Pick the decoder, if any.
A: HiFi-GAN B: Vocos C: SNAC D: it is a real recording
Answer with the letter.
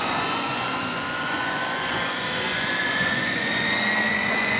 B